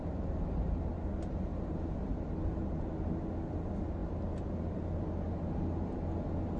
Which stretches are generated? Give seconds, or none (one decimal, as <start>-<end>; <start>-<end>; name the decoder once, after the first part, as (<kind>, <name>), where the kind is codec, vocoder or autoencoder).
none